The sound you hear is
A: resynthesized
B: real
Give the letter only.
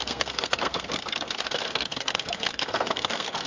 A